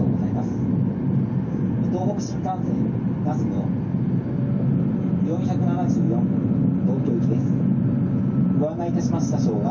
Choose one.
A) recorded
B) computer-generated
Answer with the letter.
A